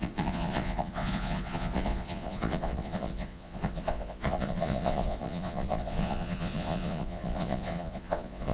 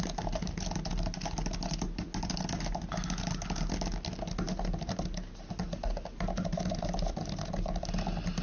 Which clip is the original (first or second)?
second